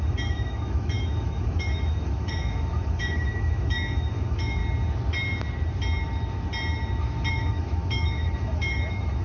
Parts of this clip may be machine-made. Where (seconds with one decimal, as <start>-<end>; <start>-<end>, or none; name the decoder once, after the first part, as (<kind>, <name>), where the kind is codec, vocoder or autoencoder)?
0.0-4.6 (autoencoder, DAC-VAE); 7.3-9.2